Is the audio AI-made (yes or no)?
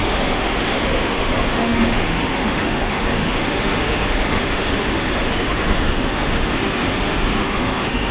yes